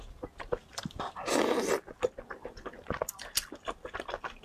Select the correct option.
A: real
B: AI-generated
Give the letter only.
A